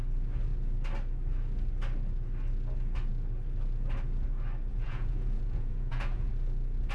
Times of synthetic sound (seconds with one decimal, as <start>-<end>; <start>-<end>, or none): 4.7-6.3